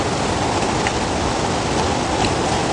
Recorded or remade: recorded